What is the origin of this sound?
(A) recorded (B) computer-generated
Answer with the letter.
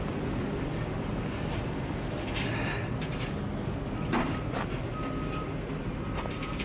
A